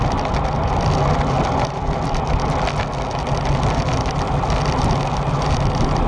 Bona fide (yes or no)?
yes